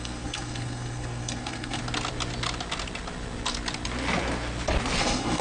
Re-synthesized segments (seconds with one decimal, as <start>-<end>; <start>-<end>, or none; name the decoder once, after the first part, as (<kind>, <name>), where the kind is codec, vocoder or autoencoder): 0.0-1.8 (codec, SNAC); 5.0-5.4